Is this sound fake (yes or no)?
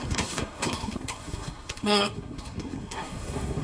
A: yes